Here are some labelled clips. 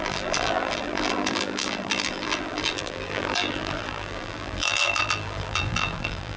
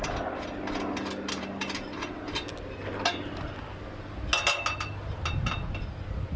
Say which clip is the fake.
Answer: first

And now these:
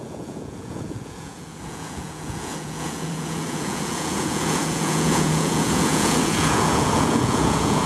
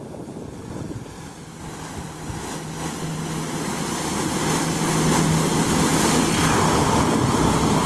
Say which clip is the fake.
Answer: first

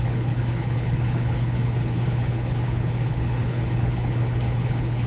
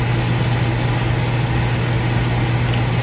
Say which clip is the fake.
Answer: first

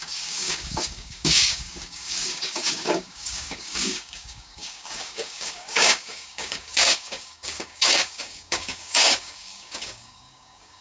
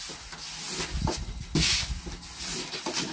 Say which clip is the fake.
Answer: first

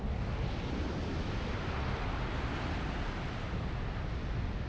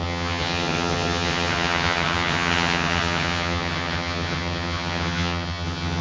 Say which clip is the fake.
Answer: second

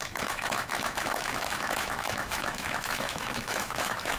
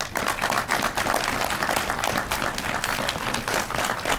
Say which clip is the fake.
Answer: first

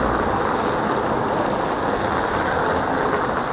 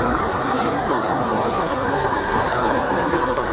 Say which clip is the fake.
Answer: second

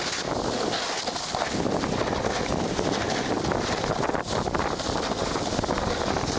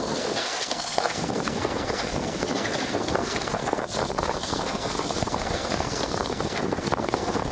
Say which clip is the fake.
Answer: second